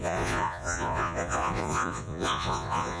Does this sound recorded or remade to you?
remade